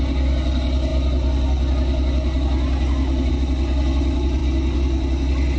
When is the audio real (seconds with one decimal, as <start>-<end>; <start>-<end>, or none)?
0.0-5.6